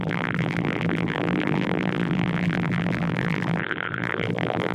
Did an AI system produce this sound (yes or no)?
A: yes